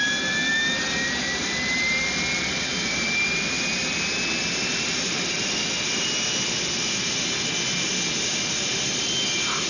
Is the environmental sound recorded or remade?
recorded